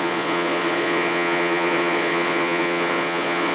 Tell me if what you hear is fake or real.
fake